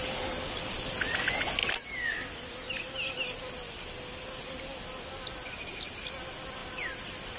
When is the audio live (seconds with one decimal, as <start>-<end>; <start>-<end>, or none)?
0.0-7.4